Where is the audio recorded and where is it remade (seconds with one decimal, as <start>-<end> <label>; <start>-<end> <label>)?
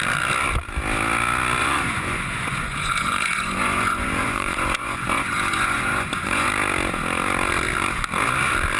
0.0-1.6 recorded; 1.6-6.5 remade; 6.5-8.8 recorded